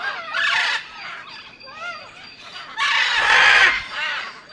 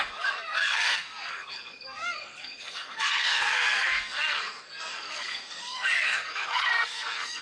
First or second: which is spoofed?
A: second